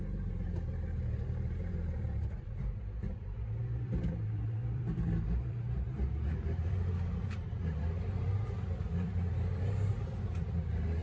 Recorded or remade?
remade